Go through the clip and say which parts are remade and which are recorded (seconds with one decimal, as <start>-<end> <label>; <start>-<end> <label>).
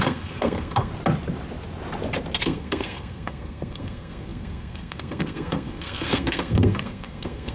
0.0-0.9 remade; 0.9-2.4 recorded; 2.4-7.5 remade